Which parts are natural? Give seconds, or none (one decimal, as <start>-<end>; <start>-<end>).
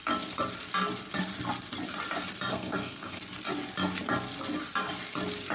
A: 0.0-2.5; 3.2-5.5